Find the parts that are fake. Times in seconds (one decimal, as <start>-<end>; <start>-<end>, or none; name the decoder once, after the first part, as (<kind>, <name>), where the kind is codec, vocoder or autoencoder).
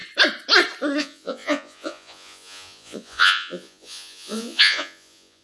1.0-5.4 (vocoder, Vocos)